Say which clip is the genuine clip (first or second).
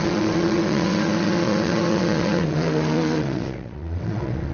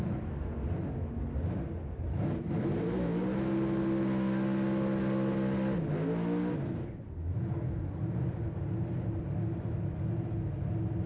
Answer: second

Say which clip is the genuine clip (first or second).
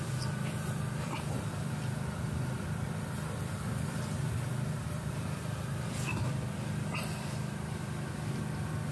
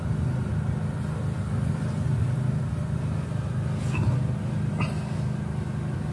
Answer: second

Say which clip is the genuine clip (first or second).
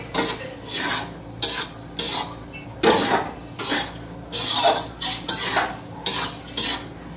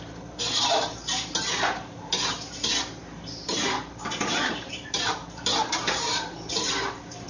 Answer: first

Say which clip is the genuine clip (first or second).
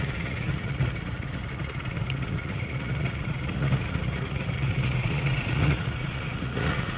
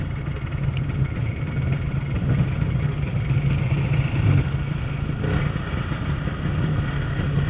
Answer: second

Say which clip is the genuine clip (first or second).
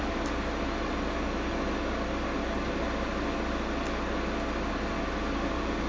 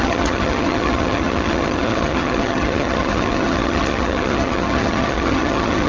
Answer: first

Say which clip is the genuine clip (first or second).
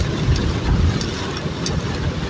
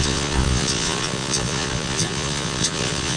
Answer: first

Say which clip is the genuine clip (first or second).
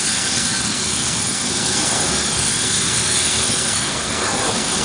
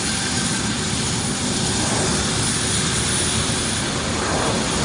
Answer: second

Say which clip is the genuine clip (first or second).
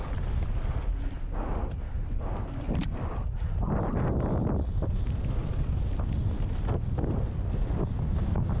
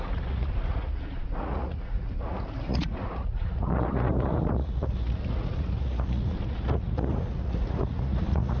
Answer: first